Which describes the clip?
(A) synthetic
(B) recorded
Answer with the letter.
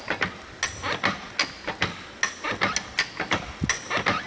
B